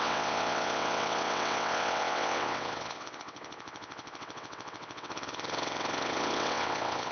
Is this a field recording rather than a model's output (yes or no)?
no